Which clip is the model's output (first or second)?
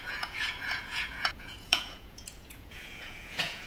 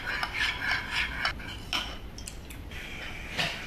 first